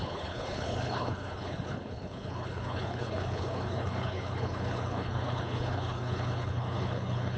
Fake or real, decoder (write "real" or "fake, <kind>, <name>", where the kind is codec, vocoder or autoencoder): fake, codec, HILCodec